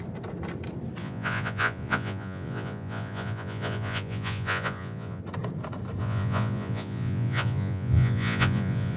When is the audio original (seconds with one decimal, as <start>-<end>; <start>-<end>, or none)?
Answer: 0.0-1.0; 5.2-6.0